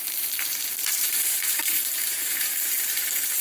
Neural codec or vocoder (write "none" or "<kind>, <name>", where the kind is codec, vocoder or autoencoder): vocoder, BigVGAN v2